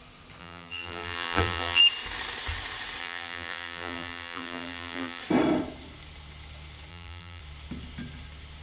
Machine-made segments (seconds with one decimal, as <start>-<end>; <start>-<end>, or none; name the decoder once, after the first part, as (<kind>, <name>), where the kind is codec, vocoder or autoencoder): 0.4-1.8 (vocoder, BigVGAN v2); 3.0-5.2; 6.9-7.4